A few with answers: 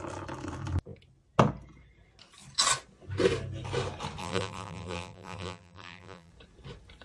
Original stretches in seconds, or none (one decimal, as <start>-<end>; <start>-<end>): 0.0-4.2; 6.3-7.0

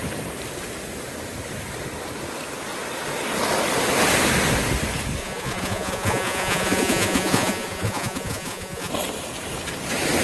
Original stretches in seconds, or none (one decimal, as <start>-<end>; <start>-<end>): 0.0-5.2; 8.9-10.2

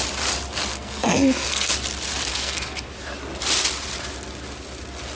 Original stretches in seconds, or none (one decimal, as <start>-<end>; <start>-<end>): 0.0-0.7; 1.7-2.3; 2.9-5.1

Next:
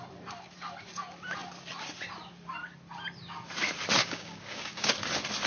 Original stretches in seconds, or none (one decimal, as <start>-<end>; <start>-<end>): 0.0-4.0; 4.9-5.5

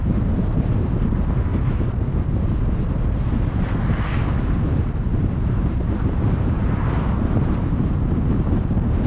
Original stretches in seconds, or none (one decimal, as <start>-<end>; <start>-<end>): 1.5-4.8

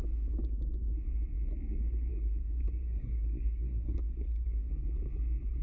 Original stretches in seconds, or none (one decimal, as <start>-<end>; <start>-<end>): 0.0-2.1; 4.7-5.6